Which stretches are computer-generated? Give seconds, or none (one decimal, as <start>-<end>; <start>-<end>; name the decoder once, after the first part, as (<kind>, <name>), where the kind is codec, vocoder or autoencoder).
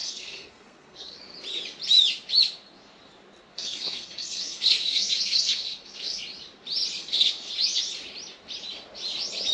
0.0-1.2 (codec, SNAC); 3.5-6.2; 7.0-7.5